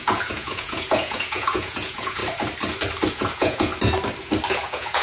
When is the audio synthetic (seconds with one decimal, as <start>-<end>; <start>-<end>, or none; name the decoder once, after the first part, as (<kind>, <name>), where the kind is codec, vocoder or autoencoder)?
0.0-2.2 (vocoder, Vocos); 3.1-3.7; 4.5-5.0